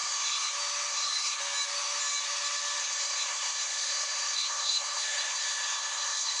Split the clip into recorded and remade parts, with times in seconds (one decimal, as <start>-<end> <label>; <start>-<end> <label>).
0.0-0.5 remade; 0.5-0.9 recorded; 0.9-1.4 remade; 1.4-2.8 recorded; 2.8-6.4 remade